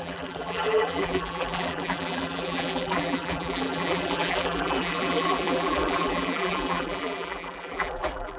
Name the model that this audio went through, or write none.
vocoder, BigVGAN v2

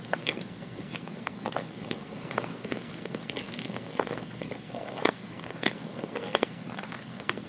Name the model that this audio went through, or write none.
codec, SNAC